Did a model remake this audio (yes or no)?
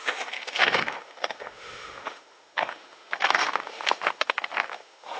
yes